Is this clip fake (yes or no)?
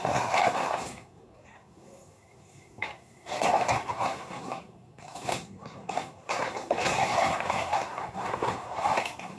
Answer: yes